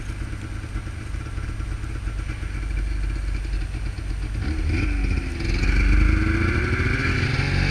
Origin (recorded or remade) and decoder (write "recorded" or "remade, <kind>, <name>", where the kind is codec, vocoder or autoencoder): recorded